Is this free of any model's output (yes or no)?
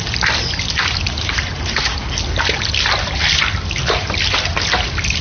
yes